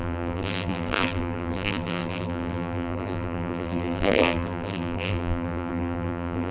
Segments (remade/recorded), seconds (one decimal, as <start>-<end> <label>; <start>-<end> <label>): 0.0-6.5 remade